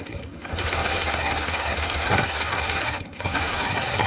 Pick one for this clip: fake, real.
fake